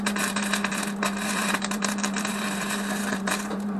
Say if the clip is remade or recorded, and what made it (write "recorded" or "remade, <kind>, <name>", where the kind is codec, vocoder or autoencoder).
remade, vocoder, BigVGAN v2